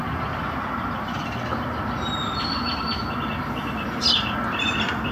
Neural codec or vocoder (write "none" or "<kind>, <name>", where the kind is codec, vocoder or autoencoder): none